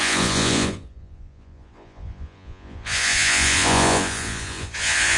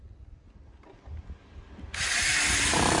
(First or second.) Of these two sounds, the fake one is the first